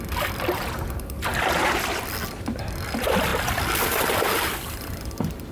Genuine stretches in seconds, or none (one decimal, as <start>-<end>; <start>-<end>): 0.0-5.5